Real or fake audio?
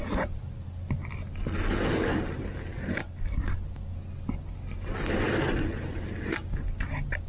real